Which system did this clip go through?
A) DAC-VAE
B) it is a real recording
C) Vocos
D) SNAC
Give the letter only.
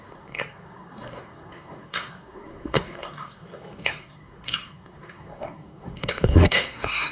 D